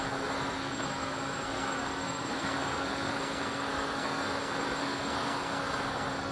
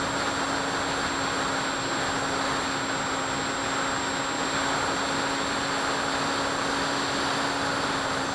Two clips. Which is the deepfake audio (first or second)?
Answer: first